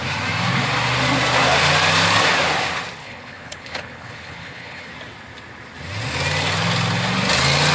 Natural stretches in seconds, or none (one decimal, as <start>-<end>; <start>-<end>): 0.0-3.0; 4.9-7.7